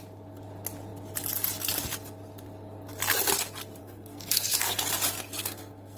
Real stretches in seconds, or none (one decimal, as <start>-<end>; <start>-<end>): 0.0-3.8; 4.8-5.4